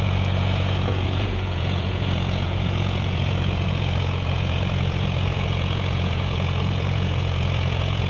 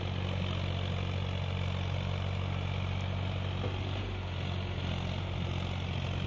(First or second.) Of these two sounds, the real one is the second